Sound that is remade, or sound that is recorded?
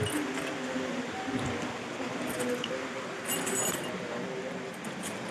recorded